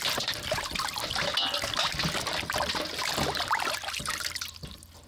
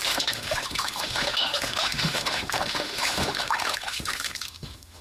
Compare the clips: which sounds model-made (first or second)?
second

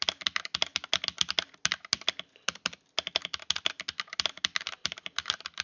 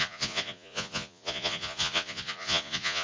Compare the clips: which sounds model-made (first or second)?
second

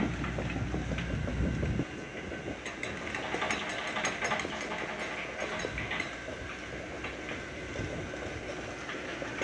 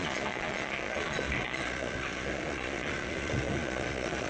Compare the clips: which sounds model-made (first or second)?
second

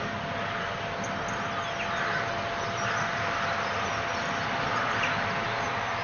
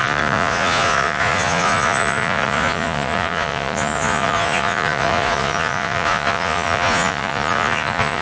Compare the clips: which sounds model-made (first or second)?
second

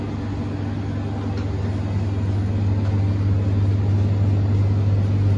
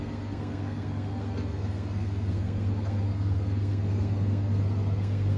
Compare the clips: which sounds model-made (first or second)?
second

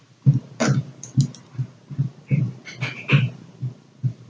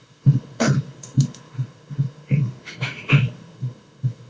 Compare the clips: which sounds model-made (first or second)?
second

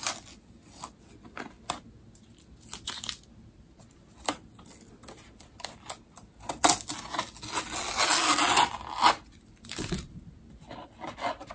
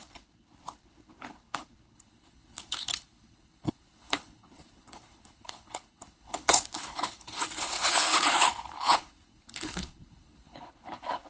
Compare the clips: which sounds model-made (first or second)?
second